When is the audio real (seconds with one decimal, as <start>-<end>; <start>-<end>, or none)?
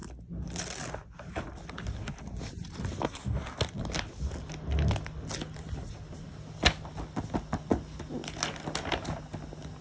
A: 0.0-9.8